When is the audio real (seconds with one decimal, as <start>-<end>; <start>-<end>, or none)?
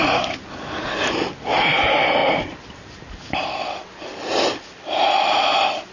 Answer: 0.0-5.9